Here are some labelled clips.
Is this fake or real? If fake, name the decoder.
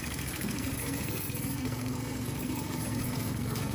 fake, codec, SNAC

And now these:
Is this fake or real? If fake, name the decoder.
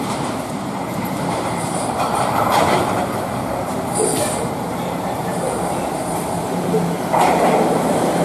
fake, vocoder, BigVGAN v2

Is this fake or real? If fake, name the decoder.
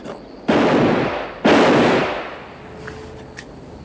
real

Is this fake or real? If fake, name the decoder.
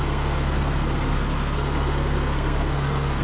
fake, codec, SNAC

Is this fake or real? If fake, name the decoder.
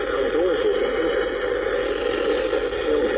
real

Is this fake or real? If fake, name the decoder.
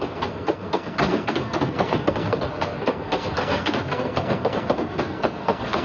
fake, codec, SNAC